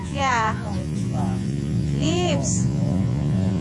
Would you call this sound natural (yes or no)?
no